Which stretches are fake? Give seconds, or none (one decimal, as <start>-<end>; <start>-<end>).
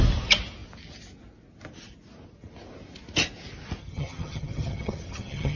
3.8-5.6